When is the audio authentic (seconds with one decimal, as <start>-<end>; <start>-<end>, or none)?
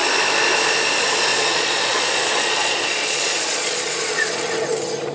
0.0-1.3; 4.4-5.1